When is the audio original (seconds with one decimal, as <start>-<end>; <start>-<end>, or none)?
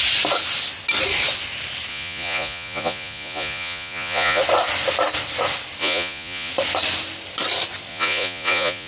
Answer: 0.0-1.9; 4.4-5.8; 6.5-7.9